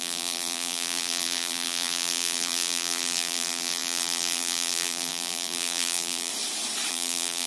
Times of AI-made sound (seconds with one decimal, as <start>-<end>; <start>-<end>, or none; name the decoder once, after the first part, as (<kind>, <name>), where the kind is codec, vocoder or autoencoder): 0.0-6.3 (vocoder, BigVGAN v2); 6.9-7.5

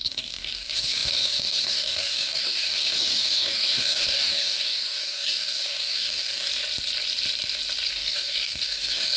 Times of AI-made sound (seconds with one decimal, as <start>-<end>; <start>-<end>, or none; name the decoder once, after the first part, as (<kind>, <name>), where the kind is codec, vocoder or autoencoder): 0.0-6.5 (codec, DAC); 7.9-9.2